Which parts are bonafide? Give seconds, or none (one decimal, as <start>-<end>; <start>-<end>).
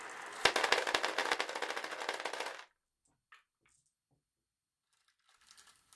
0.0-6.0